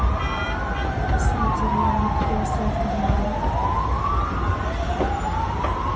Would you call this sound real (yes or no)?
yes